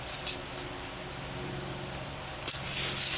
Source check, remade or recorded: recorded